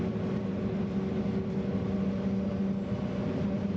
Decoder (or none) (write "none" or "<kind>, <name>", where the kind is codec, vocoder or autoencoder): none